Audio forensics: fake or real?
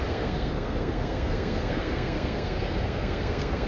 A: fake